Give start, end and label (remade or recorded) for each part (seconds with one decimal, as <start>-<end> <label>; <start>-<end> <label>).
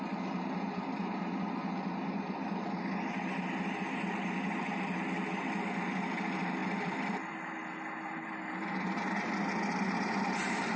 0.0-6.6 recorded; 6.6-8.5 remade; 8.5-10.8 recorded